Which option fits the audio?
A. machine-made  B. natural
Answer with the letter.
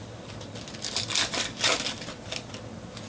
A